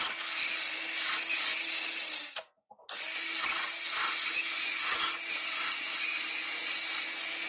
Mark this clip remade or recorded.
recorded